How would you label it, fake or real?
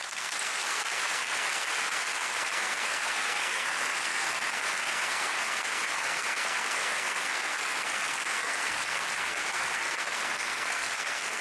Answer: fake